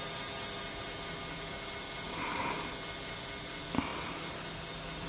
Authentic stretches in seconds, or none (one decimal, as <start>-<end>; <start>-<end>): 0.0-5.1